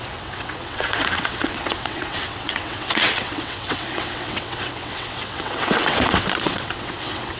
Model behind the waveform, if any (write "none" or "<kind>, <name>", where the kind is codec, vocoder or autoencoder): vocoder, WaveNeXt